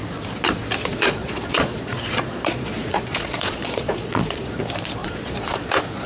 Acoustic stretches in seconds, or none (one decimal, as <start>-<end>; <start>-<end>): 0.0-0.9; 4.6-5.0